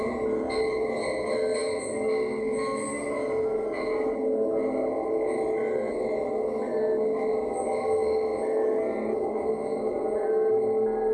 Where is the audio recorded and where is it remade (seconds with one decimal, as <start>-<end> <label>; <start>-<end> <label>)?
0.0-11.1 recorded